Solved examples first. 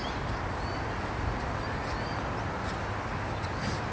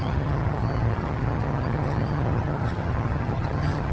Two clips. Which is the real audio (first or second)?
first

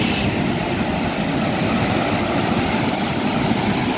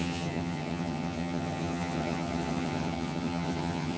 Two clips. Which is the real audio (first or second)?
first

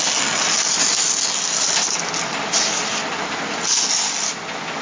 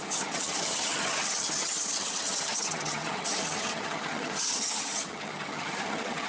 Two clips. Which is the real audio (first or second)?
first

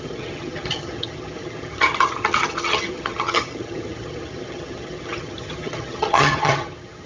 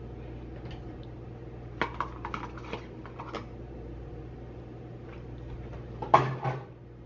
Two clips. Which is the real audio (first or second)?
second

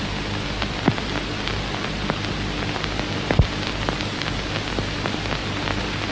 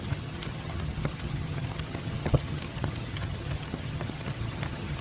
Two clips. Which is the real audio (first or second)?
first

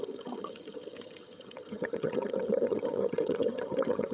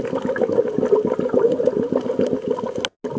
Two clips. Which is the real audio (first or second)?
second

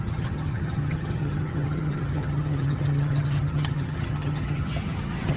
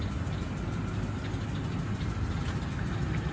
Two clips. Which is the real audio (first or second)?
second